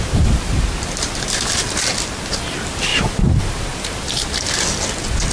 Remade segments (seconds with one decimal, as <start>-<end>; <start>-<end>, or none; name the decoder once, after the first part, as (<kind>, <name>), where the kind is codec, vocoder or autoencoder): none